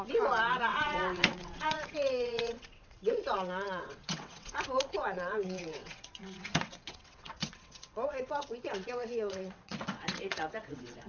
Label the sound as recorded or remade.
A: remade